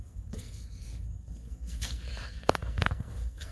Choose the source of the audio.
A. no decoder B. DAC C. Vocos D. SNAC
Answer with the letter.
D